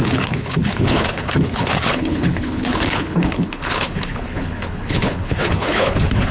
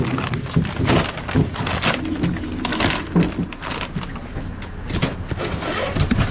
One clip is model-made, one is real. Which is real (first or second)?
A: second